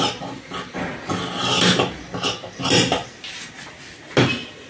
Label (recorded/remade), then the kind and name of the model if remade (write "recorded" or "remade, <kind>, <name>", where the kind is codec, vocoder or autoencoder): recorded